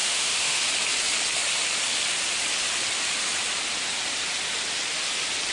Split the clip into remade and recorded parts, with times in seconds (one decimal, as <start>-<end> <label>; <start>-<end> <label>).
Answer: 0.0-0.6 remade; 0.6-5.5 recorded